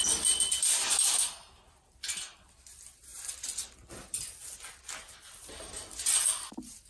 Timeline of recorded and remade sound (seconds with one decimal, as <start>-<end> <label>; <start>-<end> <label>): 0.0-6.9 recorded